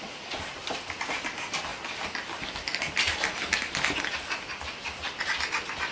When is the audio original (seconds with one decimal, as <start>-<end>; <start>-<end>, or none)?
0.0-0.6; 1.2-5.9